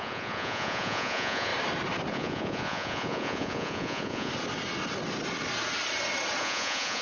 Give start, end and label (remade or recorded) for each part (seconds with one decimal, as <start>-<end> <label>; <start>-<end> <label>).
0.0-1.5 remade; 1.5-2.1 recorded; 2.1-4.3 remade; 4.3-6.4 recorded; 6.4-7.0 remade